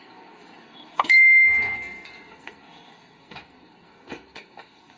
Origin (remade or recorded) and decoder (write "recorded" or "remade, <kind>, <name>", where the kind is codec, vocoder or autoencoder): remade, codec, SNAC